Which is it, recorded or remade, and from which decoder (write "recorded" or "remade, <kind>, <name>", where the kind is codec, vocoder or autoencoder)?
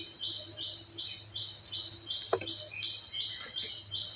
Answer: recorded